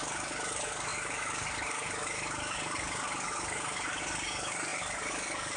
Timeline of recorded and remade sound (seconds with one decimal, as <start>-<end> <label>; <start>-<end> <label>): 0.0-5.6 remade